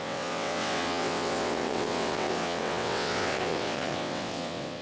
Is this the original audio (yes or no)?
no